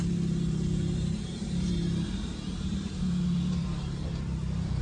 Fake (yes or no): yes